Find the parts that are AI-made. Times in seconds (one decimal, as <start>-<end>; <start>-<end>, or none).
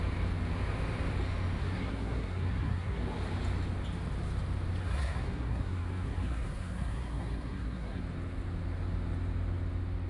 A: 1.6-3.0; 4.8-8.0